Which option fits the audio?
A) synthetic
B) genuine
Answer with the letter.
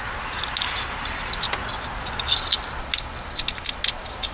B